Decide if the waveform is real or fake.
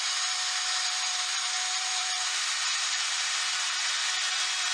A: fake